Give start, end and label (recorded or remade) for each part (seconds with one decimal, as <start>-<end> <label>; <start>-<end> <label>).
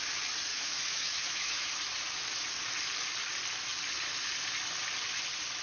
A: 0.0-0.5 recorded; 0.5-1.7 remade; 1.7-5.6 recorded